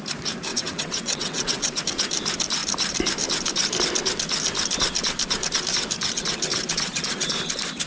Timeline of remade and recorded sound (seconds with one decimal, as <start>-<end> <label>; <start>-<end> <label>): 0.0-0.5 recorded; 0.5-1.8 remade; 1.8-7.9 recorded